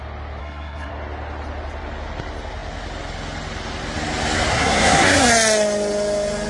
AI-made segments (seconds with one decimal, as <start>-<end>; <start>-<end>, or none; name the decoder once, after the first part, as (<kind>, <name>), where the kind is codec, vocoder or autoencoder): 0.4-0.9 (codec, SNAC); 4.5-5.2